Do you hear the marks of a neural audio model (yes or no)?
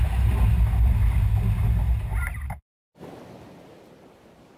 no